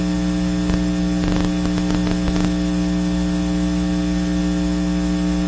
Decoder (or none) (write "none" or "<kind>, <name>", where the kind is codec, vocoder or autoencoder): none